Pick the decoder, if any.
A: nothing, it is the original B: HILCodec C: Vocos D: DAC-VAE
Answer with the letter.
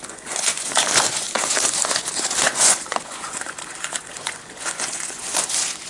C